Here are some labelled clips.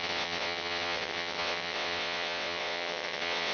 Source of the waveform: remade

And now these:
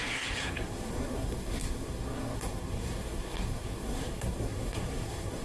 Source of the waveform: remade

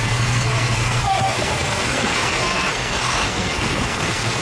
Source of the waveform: remade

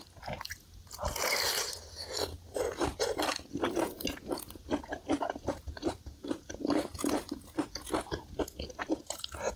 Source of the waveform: recorded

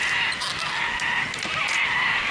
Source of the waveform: recorded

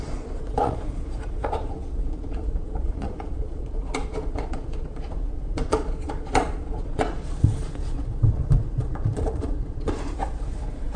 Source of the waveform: remade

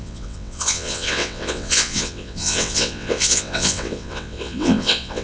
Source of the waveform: remade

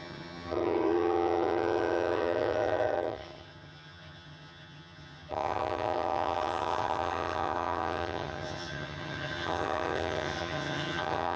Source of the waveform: remade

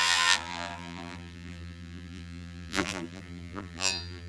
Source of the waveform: remade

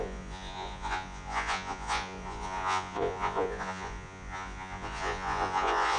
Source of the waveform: remade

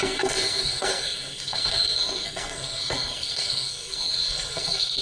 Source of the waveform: remade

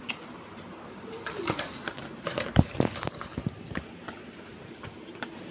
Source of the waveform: remade